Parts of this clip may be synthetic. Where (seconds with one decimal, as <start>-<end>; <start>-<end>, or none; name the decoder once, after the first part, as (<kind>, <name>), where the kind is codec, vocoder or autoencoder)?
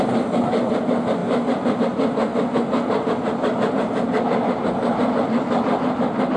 none